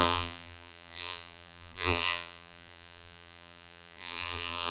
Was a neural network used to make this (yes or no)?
yes